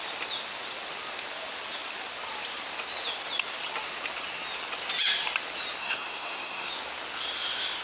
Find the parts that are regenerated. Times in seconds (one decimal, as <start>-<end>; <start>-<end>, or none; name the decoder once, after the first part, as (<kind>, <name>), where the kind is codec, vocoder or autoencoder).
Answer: 5.8-6.7 (codec, SNAC)